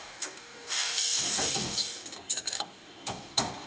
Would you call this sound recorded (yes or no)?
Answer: no